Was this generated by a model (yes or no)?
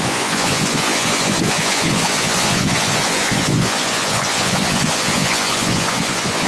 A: yes